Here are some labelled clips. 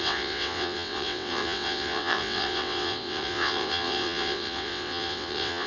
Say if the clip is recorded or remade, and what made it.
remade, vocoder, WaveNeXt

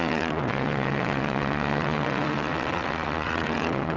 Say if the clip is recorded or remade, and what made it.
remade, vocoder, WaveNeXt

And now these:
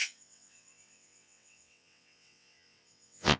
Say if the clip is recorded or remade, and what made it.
remade, vocoder, WaveNeXt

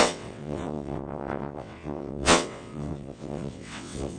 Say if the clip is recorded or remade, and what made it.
remade, vocoder, WaveNeXt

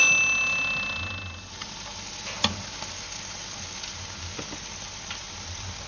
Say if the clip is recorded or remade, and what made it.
recorded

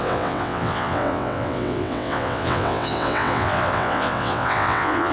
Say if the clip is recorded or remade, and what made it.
remade, vocoder, WaveNeXt